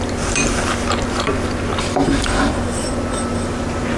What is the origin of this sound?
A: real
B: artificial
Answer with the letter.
B